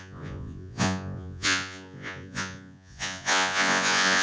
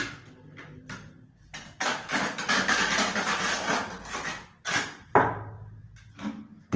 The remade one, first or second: first